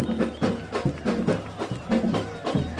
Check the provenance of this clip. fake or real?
real